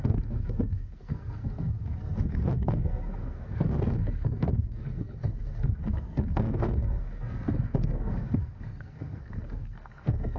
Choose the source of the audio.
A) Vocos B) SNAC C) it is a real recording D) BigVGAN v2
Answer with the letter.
B